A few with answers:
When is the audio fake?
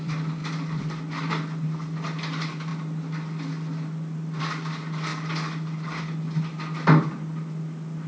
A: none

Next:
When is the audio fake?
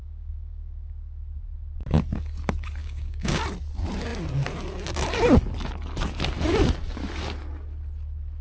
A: 0.0-0.9 (codec, DAC); 2.8-3.4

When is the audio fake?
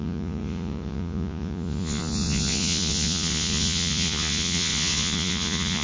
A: 0.0-5.8 (vocoder, Vocos)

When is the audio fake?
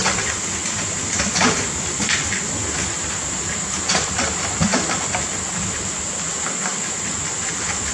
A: none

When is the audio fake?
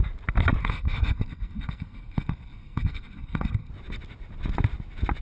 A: 0.6-3.7 (codec, SNAC)